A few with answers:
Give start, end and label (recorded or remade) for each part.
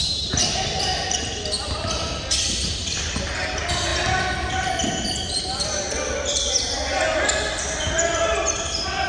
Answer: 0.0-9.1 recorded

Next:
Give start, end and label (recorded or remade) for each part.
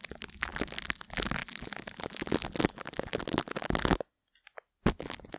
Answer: 0.0-5.4 recorded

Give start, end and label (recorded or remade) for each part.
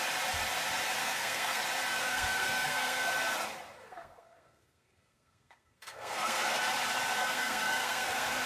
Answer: 0.0-1.0 recorded; 1.0-1.6 remade; 1.6-2.0 recorded; 2.0-3.1 remade; 3.1-3.8 recorded; 3.8-6.6 remade; 6.6-7.2 recorded; 7.2-8.5 remade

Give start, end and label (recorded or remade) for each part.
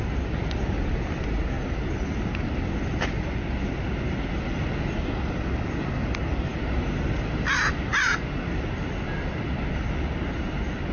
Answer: 0.0-10.9 recorded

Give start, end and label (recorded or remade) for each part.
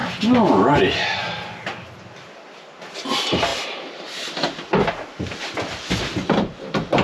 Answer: 0.0-7.0 recorded